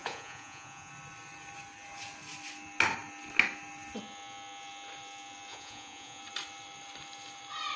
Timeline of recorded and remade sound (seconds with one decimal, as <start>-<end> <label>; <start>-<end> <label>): 0.0-0.9 remade; 0.9-5.5 recorded; 5.5-6.2 remade; 6.2-7.8 recorded